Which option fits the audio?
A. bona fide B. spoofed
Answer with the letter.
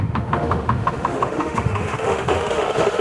B